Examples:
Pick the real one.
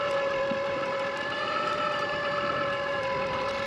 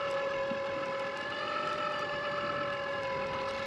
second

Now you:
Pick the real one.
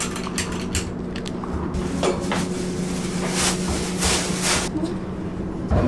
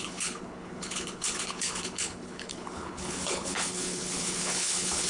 first